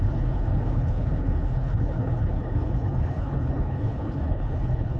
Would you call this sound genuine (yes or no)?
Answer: no